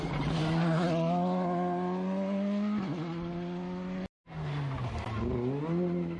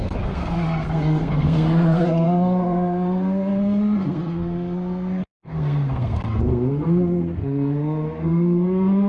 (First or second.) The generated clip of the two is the second